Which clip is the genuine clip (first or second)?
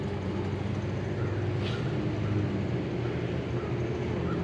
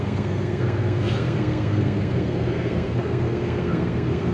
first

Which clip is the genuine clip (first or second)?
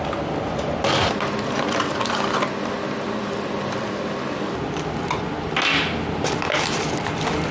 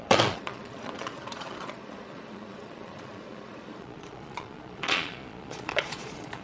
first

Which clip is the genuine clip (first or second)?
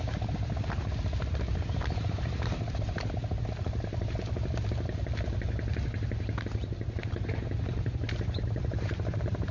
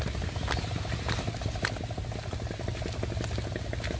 second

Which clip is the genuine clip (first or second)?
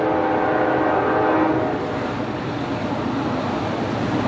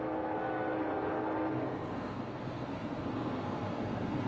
first